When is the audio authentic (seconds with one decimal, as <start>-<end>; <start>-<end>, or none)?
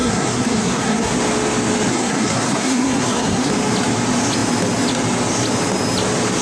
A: 1.1-1.9; 3.5-6.4